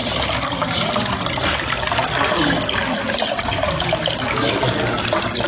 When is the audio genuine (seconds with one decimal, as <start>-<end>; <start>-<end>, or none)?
0.0-5.5